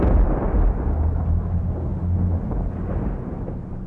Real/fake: real